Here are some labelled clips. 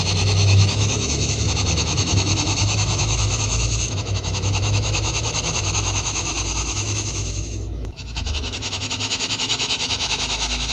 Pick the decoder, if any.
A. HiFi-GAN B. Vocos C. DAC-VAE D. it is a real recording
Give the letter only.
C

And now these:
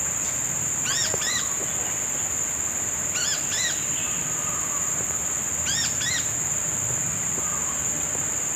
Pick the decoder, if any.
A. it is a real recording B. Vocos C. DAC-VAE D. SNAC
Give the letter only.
A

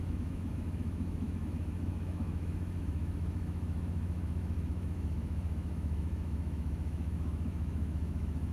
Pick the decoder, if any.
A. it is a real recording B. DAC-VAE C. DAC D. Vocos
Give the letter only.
B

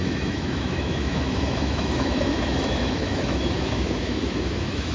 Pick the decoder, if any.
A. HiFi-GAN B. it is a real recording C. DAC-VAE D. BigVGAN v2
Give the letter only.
C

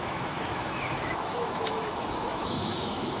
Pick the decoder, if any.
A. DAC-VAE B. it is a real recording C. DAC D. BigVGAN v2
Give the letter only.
A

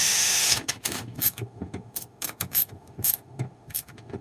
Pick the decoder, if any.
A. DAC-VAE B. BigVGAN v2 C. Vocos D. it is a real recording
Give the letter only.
A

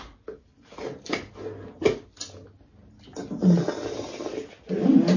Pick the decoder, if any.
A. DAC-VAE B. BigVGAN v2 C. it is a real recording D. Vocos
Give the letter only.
C